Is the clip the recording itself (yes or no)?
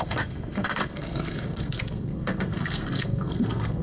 no